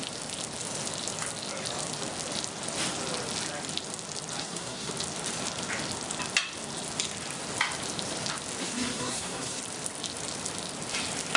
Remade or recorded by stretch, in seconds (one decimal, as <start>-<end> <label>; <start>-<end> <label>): 0.0-4.4 recorded; 4.4-4.9 remade; 4.9-8.6 recorded; 8.6-9.6 remade; 9.6-11.4 recorded